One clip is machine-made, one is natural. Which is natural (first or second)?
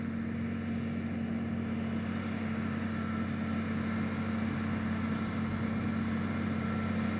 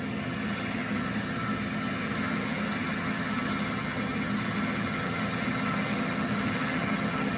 first